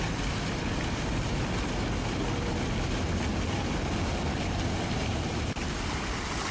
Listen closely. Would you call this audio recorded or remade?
recorded